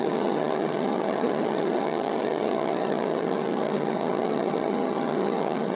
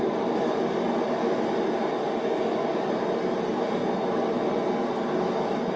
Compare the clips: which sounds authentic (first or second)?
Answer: second